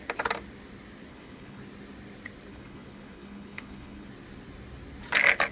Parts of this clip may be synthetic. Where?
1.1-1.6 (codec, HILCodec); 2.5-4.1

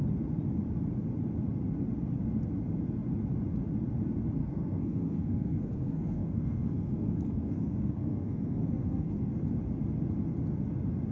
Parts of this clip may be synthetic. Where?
4.4-9.3 (codec, SNAC)

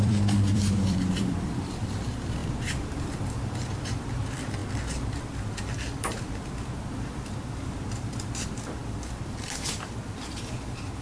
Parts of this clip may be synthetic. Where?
0.0-4.6 (vocoder, BigVGAN v2); 5.2-11.0

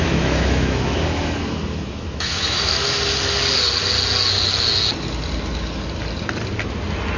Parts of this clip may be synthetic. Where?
0.0-2.7 (autoencoder, DAC-VAE)

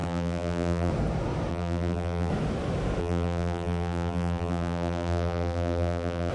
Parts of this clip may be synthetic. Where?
0.0-0.9 (vocoder, BigVGAN v2); 1.5-2.3; 3.0-6.3

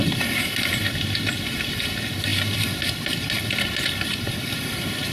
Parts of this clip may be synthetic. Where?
none

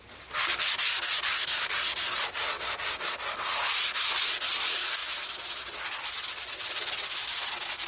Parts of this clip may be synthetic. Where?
none